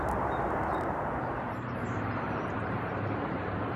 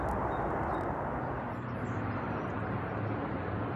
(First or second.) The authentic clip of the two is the second